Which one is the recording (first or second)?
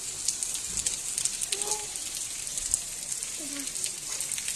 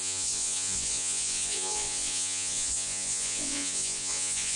first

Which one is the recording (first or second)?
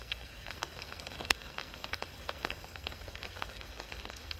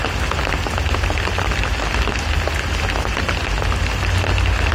second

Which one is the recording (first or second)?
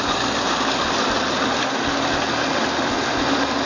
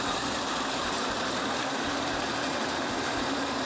first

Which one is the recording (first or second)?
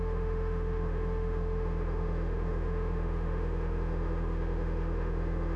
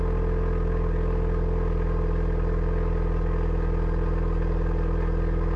second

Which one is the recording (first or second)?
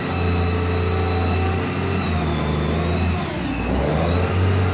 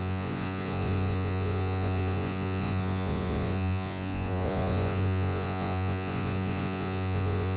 first